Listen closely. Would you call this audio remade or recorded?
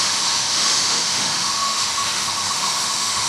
remade